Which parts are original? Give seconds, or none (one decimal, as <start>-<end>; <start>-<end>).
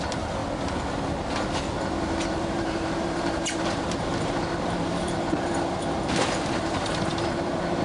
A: 0.4-2.3